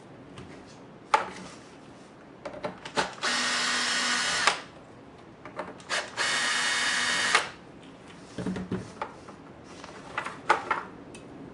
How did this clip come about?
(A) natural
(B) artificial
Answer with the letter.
A